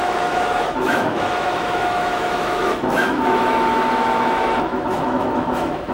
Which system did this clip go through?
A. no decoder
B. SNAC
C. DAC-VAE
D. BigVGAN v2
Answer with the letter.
C